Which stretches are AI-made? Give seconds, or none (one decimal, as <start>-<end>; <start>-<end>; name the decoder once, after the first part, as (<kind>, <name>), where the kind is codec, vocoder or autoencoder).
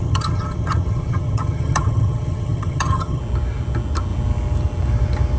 0.0-3.2 (vocoder, HiFi-GAN)